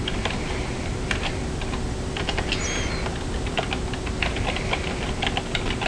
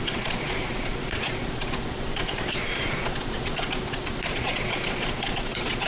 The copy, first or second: second